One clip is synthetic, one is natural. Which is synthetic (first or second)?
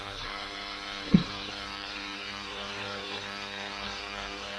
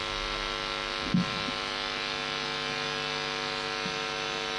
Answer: first